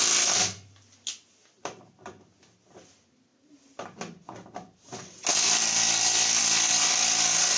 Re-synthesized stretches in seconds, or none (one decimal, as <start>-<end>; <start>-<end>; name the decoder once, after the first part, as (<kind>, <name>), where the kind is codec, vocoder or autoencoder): none